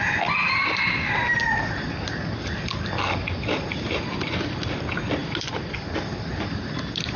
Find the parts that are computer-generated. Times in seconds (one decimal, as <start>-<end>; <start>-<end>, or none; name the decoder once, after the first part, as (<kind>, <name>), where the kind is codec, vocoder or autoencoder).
5.2-6.7 (vocoder, BigVGAN v2)